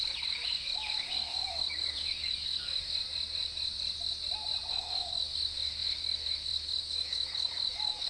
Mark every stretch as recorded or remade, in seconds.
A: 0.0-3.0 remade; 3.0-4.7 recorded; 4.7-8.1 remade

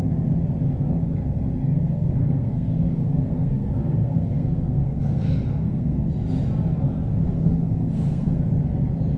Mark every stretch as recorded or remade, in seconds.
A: 0.0-1.6 recorded; 1.6-6.1 remade; 6.1-7.2 recorded; 7.2-8.4 remade; 8.4-9.2 recorded

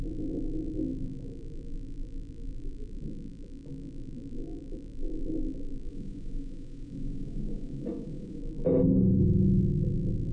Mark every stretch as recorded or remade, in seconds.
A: 0.0-5.9 recorded; 5.9-8.4 remade; 8.4-10.3 recorded

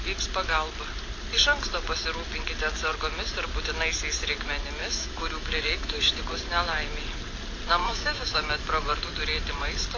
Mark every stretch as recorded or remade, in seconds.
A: 0.0-4.8 recorded; 4.8-6.2 remade; 6.2-7.8 recorded; 7.8-9.0 remade; 9.0-10.0 recorded

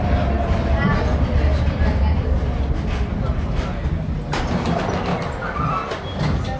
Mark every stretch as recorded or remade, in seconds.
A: 0.0-6.6 recorded

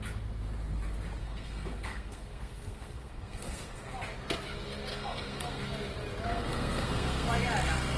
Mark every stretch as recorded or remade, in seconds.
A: 0.0-1.2 recorded; 1.2-3.9 remade; 3.9-4.9 recorded; 4.9-5.6 remade; 5.6-6.3 recorded; 6.3-7.3 remade; 7.3-8.0 recorded

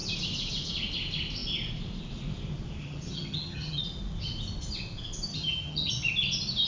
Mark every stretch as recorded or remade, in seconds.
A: 0.0-2.8 recorded; 2.8-3.8 remade; 3.8-5.3 recorded; 5.3-5.9 remade; 5.9-6.7 recorded